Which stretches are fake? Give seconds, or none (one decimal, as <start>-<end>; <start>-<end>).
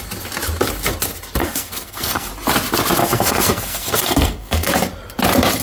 1.4-2.3; 3.0-4.7